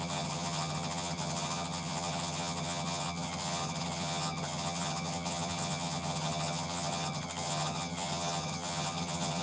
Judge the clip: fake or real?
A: fake